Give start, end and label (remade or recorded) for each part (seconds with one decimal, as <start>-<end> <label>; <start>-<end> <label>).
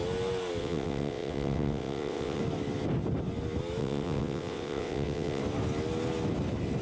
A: 0.0-0.6 recorded; 0.6-2.4 remade; 2.4-3.8 recorded; 3.8-5.4 remade; 5.4-6.8 recorded